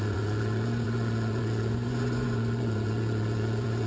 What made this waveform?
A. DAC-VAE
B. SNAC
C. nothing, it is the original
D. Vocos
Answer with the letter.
D